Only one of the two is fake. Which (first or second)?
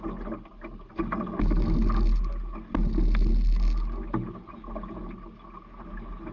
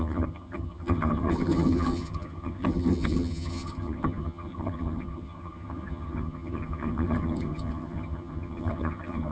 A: second